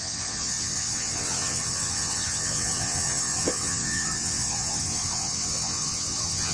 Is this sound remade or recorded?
remade